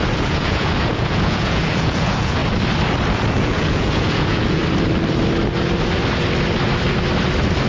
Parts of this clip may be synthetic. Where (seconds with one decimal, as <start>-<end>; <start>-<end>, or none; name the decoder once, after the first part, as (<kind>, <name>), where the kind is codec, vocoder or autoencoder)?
0.0-2.4 (vocoder, Vocos); 3.3-4.6